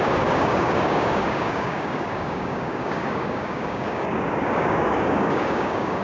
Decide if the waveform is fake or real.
fake